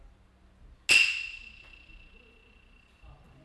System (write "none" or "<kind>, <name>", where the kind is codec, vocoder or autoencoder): none